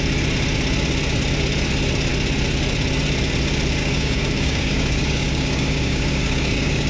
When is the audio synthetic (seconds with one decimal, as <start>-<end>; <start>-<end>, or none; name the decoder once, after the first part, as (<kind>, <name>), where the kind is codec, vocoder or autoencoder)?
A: 3.8-6.9 (codec, DAC)

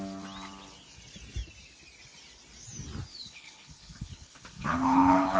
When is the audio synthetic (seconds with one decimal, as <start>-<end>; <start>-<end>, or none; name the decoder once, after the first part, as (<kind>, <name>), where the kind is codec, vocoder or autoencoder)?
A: 3.1-5.4 (codec, HILCodec)

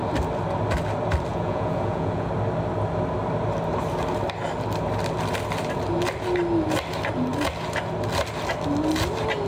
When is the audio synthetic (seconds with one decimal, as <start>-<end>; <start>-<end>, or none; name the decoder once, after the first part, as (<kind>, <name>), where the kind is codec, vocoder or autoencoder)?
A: 1.3-2.3 (vocoder, Vocos)

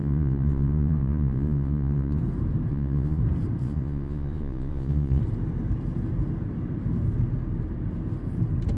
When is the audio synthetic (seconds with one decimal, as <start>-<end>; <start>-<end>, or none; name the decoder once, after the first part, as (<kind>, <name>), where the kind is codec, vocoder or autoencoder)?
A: 0.0-2.2 (vocoder, Vocos); 2.7-3.2; 3.6-5.2

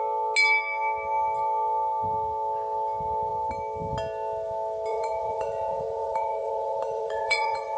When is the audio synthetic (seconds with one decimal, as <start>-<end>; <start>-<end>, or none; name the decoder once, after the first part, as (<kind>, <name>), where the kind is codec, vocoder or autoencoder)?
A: 4.9-7.8 (vocoder, Vocos)